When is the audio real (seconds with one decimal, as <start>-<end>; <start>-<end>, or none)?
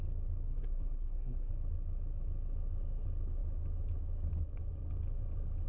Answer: 0.0-0.5; 1.5-5.7